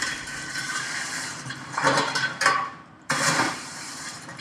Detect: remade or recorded remade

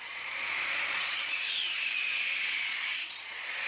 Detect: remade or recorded remade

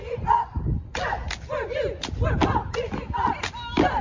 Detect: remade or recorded recorded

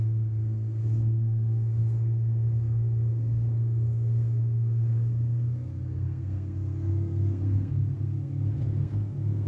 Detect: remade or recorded remade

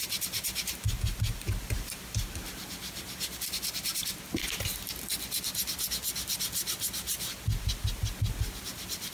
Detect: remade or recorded recorded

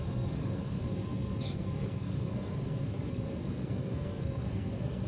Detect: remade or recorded remade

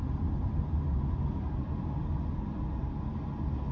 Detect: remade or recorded recorded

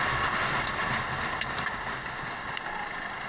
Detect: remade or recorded recorded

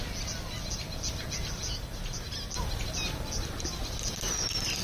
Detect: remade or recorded recorded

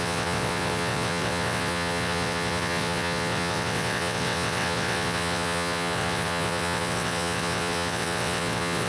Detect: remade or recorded remade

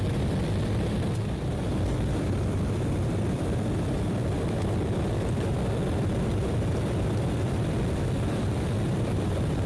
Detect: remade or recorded remade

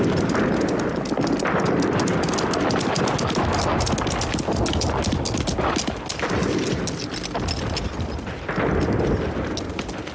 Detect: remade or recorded recorded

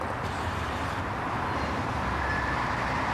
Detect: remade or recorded remade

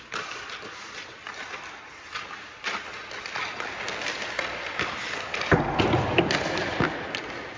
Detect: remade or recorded recorded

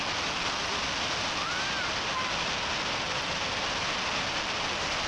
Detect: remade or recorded recorded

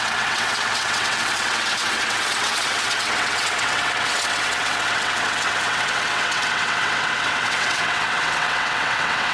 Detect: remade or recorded remade